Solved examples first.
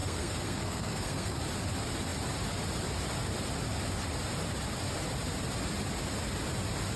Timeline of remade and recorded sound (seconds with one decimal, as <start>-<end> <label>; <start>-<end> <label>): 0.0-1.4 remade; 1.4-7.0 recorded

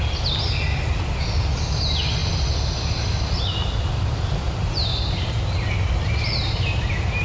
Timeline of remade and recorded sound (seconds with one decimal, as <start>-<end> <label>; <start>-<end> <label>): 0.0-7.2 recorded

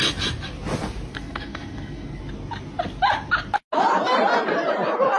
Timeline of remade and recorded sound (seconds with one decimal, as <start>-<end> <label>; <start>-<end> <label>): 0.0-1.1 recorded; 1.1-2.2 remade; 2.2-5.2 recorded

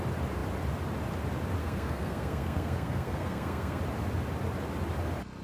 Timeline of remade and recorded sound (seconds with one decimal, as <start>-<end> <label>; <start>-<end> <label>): 0.0-1.6 recorded; 1.6-3.8 remade; 3.8-5.4 recorded

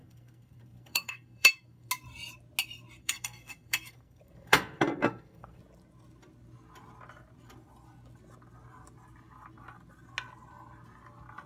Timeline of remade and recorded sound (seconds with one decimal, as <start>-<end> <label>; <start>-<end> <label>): 0.0-1.9 remade; 1.9-3.0 recorded; 3.0-5.6 remade; 5.6-11.5 recorded

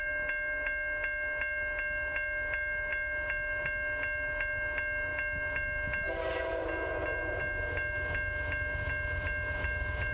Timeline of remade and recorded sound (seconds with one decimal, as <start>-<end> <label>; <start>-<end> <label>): 0.0-10.1 recorded

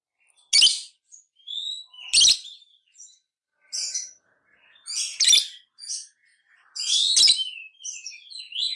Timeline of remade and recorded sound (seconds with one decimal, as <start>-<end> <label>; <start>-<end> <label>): 0.0-8.8 recorded

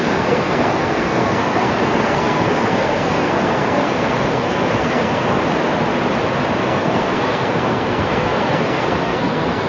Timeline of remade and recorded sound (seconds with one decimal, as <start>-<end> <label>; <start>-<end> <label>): 0.0-5.4 remade; 5.4-6.6 recorded; 6.6-9.7 remade